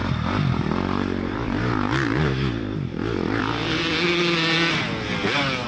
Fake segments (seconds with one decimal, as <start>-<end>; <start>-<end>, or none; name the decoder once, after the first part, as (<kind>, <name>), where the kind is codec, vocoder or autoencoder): 0.0-3.4 (vocoder, BigVGAN v2)